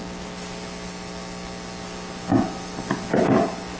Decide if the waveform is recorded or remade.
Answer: recorded